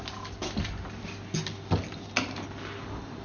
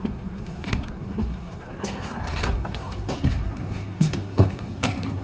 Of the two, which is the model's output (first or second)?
second